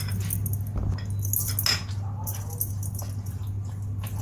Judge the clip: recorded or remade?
recorded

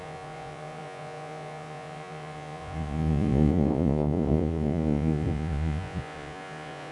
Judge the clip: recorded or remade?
remade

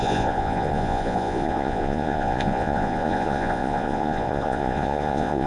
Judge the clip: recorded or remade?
remade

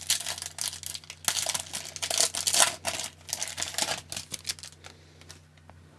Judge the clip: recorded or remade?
recorded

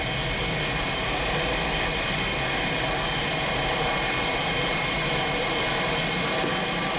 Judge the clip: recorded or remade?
recorded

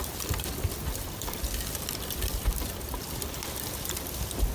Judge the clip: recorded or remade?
recorded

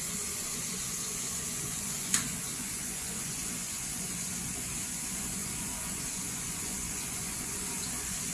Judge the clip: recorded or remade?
remade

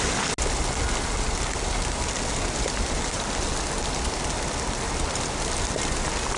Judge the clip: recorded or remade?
recorded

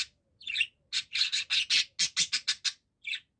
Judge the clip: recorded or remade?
recorded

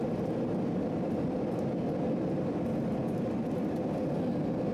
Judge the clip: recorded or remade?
recorded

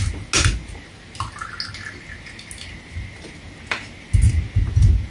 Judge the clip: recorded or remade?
recorded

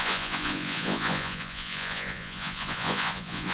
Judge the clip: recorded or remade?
remade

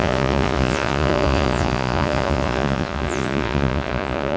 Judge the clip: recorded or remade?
remade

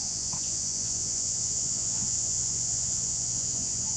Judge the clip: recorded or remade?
remade